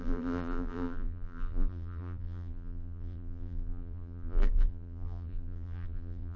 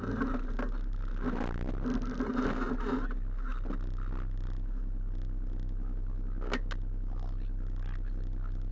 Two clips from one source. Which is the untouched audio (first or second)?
second